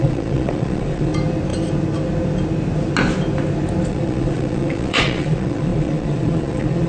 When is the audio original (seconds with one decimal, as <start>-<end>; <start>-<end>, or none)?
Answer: 1.1-3.9